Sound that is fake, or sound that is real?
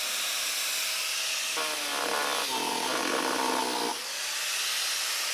real